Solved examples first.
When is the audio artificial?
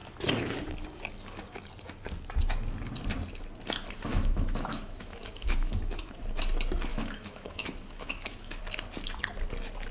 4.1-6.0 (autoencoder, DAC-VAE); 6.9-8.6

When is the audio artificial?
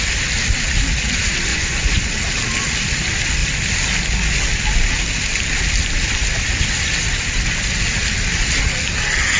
1.5-2.1 (vocoder, Vocos)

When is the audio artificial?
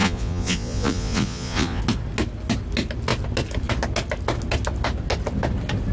0.0-1.8 (vocoder, Vocos)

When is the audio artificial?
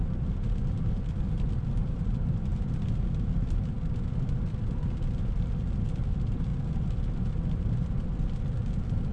none